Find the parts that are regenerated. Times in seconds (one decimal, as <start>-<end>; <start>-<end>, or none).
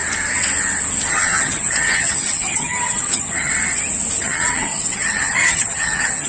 1.1-3.5; 4.2-6.3